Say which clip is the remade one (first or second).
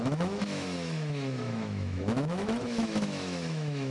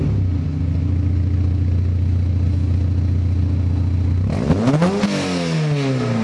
first